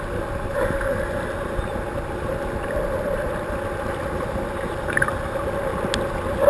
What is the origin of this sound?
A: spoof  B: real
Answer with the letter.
B